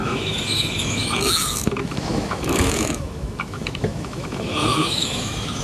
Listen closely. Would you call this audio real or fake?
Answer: fake